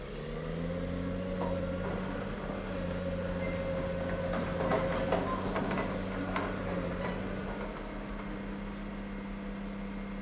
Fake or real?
real